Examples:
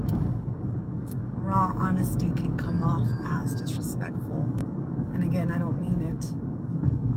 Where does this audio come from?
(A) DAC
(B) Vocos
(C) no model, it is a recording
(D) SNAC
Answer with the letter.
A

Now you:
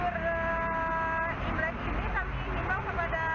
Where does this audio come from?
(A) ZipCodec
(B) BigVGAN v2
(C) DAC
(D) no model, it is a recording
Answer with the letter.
D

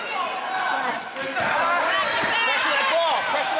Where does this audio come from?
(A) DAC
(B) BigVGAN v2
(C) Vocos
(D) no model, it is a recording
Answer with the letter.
D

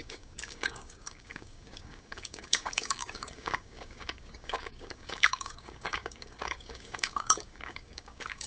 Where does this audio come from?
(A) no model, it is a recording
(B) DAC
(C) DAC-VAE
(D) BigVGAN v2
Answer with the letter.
B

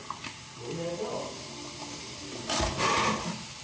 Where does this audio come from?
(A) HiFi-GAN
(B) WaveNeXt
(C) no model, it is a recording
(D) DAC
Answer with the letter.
C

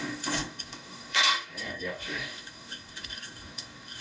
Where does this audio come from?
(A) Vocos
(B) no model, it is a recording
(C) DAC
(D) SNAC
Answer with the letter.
C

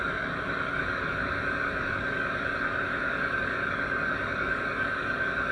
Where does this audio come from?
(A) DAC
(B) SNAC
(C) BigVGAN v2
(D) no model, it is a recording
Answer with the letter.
A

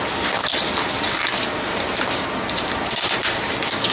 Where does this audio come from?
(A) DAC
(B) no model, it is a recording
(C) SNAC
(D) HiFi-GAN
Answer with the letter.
B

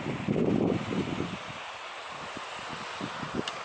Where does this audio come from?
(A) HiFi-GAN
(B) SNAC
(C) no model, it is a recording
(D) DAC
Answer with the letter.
C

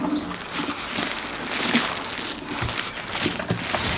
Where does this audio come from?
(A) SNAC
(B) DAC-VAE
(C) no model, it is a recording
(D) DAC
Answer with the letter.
C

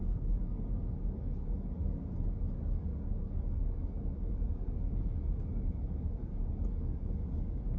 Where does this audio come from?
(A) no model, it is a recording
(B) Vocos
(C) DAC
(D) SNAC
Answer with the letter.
C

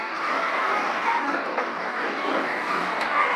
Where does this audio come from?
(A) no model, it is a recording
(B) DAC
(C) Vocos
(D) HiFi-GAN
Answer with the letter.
B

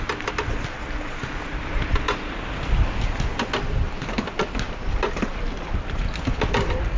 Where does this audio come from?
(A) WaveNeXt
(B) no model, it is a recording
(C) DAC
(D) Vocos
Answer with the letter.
B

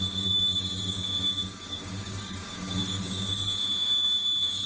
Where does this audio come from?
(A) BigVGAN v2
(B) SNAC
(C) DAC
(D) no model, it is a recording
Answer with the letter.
C